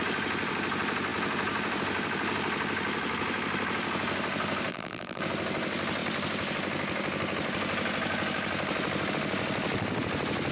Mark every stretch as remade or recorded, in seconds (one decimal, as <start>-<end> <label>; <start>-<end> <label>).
0.0-4.7 recorded; 4.7-5.2 remade; 5.2-10.5 recorded